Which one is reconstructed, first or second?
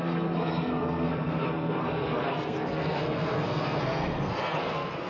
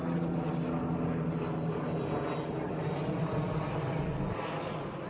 first